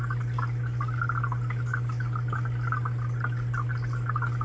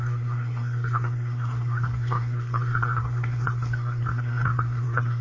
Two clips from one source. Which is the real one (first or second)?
first